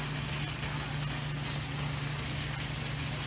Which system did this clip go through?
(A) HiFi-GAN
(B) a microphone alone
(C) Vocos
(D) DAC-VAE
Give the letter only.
B